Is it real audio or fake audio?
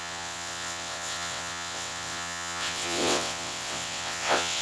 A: fake